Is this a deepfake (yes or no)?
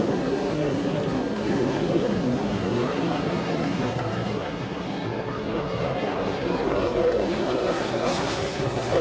yes